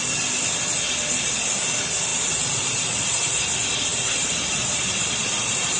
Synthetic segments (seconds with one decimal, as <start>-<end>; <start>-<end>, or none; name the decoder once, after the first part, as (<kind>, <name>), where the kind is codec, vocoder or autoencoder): 2.1-3.4 (vocoder, BigVGAN v2); 3.9-5.8